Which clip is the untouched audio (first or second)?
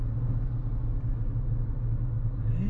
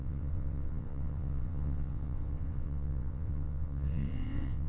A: first